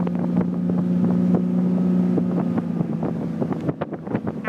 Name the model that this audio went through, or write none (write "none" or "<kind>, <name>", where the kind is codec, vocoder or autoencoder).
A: none